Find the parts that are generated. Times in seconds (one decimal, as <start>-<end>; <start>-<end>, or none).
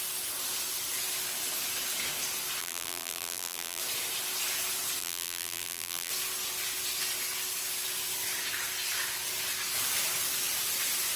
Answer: 2.6-3.8; 5.0-6.1